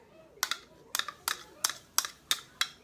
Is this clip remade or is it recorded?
recorded